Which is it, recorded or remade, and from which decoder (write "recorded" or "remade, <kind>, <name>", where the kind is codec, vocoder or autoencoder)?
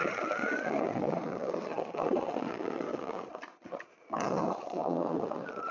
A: remade, vocoder, Vocos